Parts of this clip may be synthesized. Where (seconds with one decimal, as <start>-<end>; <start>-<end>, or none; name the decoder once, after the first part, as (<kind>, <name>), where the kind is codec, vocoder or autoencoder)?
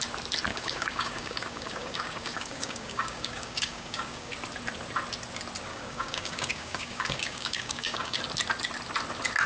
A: 0.5-4.3 (codec, DAC); 5.7-8.2